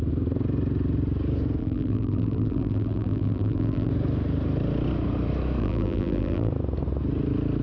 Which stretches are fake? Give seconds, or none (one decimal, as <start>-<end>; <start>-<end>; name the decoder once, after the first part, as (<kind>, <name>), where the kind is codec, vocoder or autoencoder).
1.6-3.9 (vocoder, BigVGAN v2); 5.6-6.5